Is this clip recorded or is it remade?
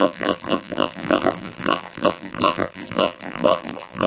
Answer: remade